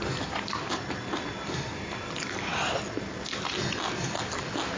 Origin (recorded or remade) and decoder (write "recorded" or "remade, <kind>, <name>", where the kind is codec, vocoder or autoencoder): recorded